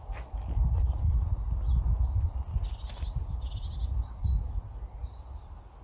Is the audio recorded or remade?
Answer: recorded